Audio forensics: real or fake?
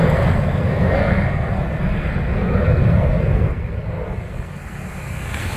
fake